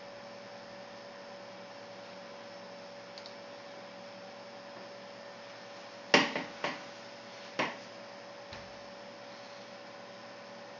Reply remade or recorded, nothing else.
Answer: recorded